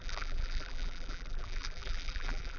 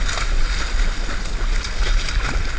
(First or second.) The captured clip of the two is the second